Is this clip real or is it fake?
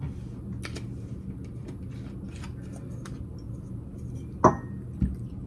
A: real